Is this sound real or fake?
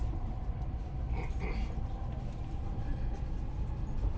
real